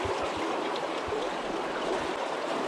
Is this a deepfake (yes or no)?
no